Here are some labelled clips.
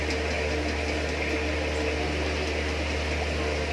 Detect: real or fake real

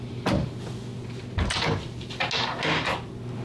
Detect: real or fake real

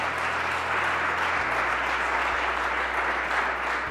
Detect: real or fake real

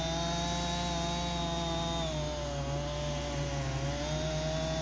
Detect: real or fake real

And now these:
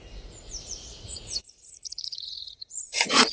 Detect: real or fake fake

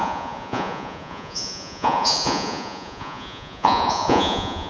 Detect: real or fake fake